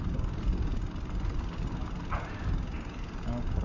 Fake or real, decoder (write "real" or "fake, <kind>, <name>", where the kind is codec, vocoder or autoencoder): real